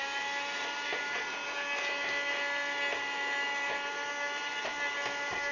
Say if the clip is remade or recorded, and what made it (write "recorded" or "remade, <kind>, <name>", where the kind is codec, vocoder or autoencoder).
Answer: recorded